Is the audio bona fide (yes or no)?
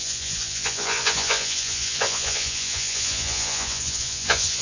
no